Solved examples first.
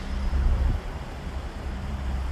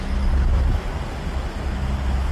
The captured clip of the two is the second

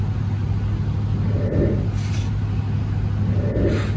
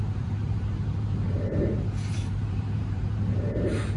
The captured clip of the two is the first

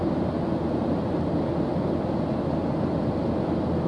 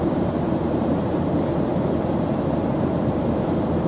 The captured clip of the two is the first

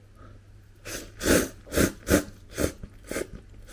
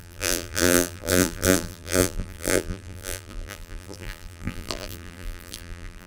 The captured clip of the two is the first